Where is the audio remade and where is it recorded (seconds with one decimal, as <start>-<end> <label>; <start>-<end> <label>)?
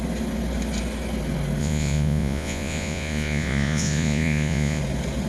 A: 0.0-1.6 recorded; 1.6-4.8 remade; 4.8-5.3 recorded